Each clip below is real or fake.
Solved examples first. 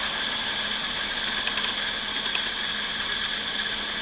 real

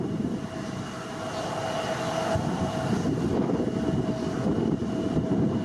real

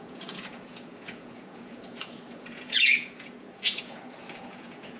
fake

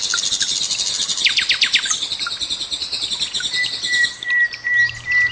real